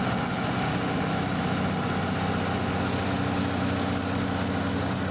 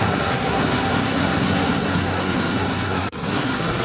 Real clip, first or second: first